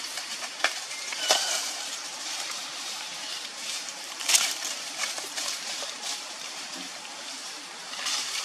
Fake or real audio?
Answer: fake